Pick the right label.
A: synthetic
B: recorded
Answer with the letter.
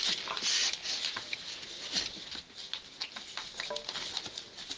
B